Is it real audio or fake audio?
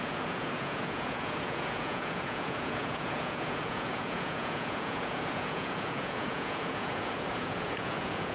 fake